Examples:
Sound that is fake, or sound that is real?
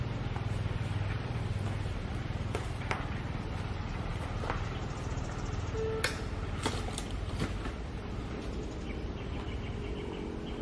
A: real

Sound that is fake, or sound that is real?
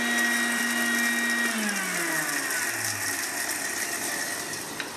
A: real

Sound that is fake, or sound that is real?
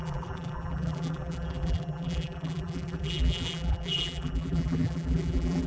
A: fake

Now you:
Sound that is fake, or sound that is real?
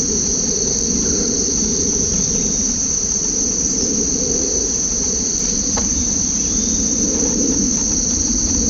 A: fake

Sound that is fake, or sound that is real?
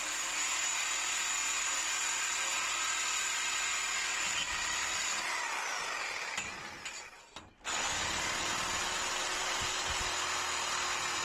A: real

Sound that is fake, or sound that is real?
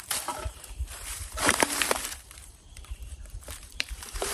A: fake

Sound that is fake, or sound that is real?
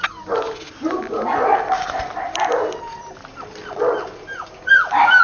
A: real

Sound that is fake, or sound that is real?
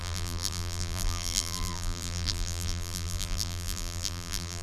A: fake